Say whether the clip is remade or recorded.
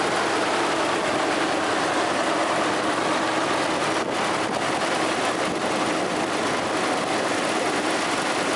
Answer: recorded